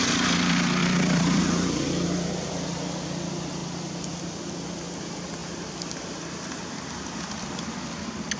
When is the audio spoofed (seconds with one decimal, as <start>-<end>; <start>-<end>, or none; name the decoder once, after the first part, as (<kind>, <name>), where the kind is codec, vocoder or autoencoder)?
0.8-1.4 (vocoder, BigVGAN v2)

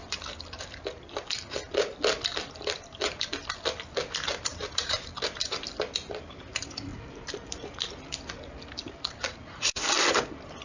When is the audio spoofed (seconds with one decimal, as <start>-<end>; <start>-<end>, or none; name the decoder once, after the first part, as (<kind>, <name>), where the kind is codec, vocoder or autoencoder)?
4.5-5.8 (vocoder, BigVGAN v2); 6.9-7.9; 8.8-9.4

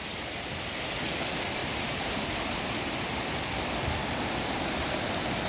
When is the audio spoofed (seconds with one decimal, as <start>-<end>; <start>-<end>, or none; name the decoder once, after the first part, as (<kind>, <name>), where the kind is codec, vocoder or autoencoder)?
1.6-4.9 (vocoder, BigVGAN v2)